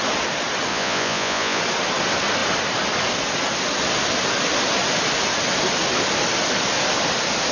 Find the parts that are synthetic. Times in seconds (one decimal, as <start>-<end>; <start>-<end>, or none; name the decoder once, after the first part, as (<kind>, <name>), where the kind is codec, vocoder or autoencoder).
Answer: 0.7-1.6 (vocoder, Vocos)